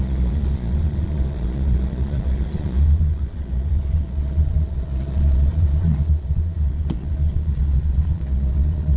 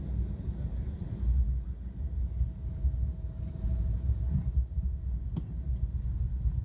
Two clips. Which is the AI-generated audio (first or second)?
first